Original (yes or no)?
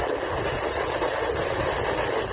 yes